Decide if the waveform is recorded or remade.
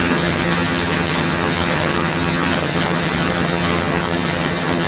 remade